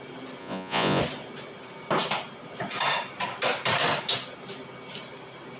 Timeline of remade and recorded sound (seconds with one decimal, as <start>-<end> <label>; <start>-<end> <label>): 0.0-0.4 recorded; 0.4-1.0 remade; 1.0-5.6 recorded